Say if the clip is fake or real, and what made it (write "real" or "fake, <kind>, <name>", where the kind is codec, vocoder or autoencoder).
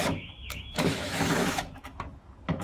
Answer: fake, autoencoder, DAC-VAE